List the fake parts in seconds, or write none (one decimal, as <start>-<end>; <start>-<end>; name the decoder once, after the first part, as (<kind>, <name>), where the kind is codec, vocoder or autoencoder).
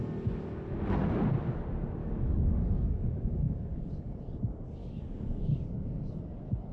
2.0-3.8 (codec, DAC); 4.8-5.4